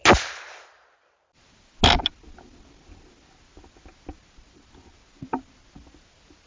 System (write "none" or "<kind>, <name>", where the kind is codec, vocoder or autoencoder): none